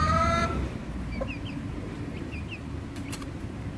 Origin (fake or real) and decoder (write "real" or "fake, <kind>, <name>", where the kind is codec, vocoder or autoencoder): fake, vocoder, BigVGAN v2